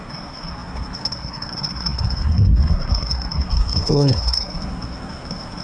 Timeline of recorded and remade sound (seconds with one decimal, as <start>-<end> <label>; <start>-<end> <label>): 0.0-5.6 remade